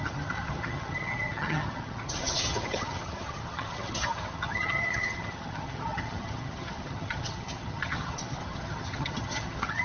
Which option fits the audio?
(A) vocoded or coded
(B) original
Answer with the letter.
A